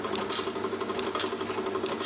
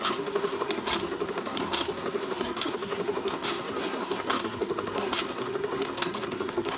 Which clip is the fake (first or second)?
second